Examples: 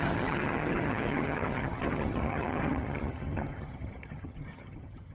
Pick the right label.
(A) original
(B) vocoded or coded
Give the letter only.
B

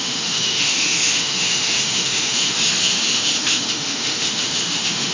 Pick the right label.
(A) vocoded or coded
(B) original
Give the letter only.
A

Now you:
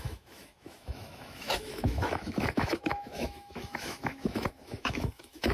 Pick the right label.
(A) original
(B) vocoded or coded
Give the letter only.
B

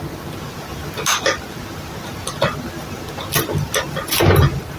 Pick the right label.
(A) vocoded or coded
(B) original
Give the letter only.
B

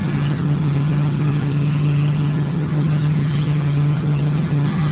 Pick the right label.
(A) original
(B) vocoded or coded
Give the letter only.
B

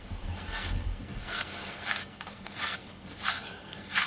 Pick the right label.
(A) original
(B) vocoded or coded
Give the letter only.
B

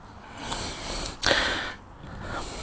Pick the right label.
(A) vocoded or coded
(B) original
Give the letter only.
A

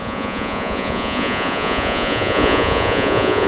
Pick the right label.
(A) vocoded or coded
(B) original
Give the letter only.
A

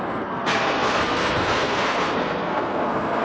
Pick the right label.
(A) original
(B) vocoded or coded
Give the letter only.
B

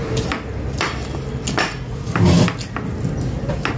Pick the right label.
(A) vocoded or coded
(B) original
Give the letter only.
B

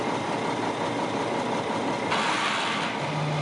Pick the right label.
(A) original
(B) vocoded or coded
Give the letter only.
A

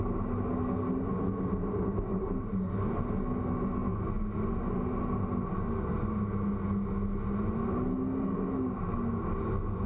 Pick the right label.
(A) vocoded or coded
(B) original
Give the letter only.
B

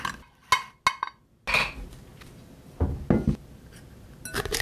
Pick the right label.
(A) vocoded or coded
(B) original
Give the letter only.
B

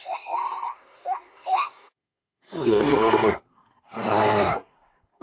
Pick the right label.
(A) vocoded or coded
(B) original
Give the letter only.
A